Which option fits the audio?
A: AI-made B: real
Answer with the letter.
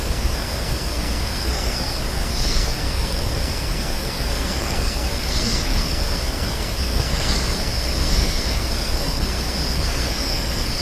A